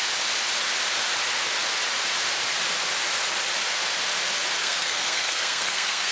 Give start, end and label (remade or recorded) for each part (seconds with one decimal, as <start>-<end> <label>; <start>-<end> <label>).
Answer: 0.0-4.6 recorded; 4.6-6.1 remade